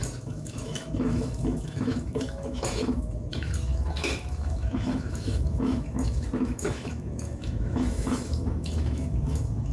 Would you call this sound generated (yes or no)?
yes